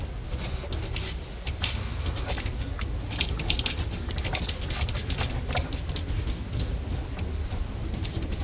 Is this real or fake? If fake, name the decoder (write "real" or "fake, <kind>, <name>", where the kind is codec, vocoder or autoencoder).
real